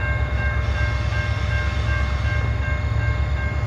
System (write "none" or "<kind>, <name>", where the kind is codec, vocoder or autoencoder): none